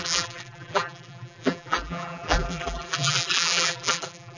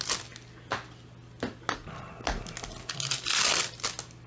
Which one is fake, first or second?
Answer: first